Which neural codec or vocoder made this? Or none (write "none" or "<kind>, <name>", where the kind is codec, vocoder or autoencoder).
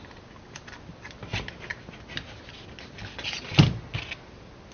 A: none